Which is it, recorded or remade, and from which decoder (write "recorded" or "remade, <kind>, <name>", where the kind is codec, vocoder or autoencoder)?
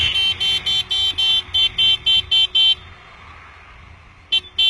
recorded